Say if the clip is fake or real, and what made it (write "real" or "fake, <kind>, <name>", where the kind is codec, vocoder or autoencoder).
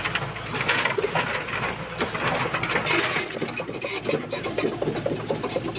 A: real